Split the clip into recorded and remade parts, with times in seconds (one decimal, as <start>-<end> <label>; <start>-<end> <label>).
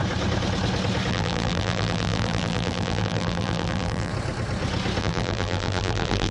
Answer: 0.0-1.1 recorded; 1.1-4.1 remade; 4.1-5.0 recorded; 5.0-6.3 remade